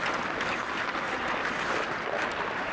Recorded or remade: recorded